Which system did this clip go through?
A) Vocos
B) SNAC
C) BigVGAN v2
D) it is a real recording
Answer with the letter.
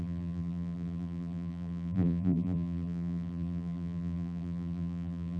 C